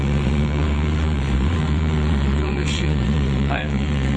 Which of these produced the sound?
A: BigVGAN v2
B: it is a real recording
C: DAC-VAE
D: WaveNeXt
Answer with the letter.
D